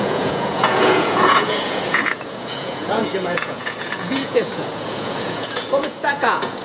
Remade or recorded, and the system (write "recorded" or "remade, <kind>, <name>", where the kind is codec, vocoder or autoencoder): remade, vocoder, Vocos